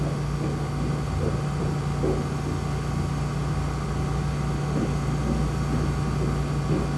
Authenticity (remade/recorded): recorded